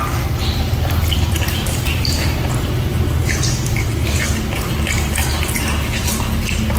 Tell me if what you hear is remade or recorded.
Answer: recorded